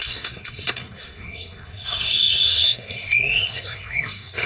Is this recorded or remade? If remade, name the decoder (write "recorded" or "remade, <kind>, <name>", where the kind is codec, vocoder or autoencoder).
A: remade, codec, SNAC